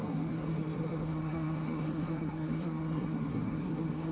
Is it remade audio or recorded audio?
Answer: remade